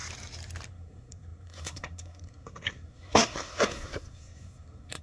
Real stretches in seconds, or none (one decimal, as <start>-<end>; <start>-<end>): 0.0-0.7